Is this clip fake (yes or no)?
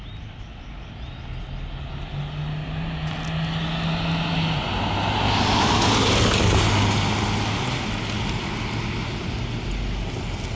no